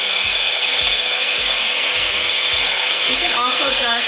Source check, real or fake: fake